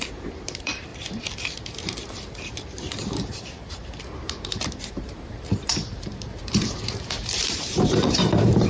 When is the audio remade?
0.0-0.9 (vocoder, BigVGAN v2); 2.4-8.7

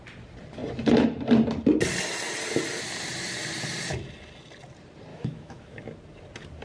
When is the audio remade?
5.1-5.8 (autoencoder, DAC-VAE)

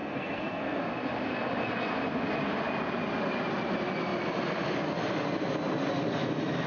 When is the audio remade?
0.0-0.8 (codec, SNAC)

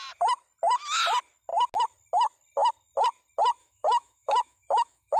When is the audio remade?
3.6-5.2 (autoencoder, DAC-VAE)

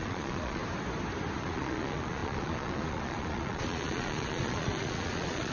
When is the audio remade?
0.0-0.6 (vocoder, Vocos); 1.4-5.5

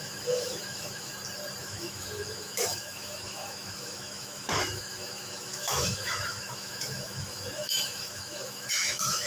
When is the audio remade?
0.0-1.1 (autoencoder, DAC-VAE); 1.6-9.3